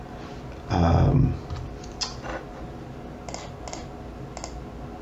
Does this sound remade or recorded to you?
recorded